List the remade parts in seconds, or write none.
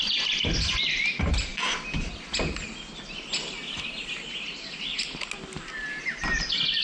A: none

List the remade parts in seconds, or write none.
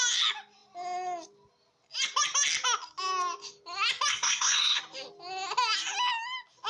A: 4.1-4.8 (codec, SNAC)